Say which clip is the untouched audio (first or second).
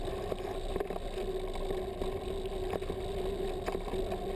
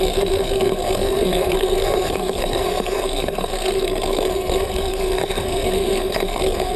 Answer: first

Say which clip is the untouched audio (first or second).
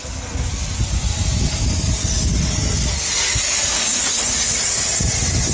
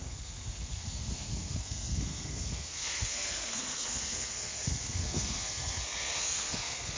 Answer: first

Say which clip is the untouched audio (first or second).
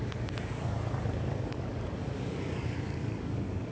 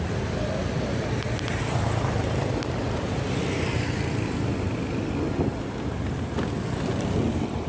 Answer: second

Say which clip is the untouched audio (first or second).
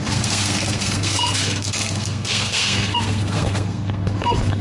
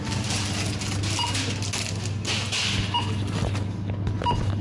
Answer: second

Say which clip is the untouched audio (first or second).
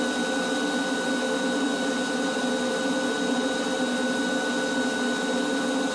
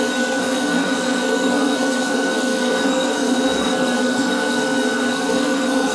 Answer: first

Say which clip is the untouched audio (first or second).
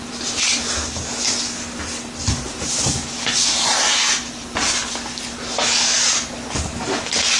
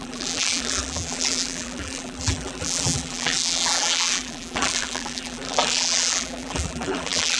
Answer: first